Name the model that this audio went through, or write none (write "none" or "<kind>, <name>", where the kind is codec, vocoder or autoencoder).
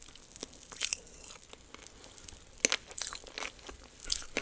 none